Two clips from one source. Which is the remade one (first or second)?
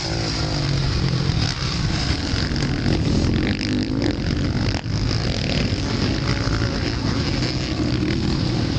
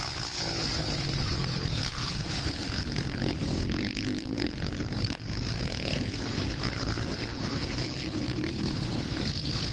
second